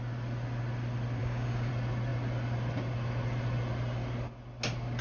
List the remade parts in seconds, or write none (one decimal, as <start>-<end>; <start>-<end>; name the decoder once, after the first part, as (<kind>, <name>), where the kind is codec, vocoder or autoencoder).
1.2-1.7 (codec, DAC)